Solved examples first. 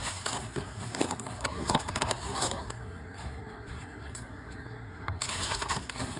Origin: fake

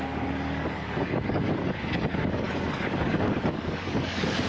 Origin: fake